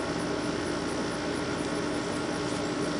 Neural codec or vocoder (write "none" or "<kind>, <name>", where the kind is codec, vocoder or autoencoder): none